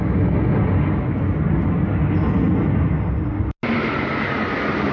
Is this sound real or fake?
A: real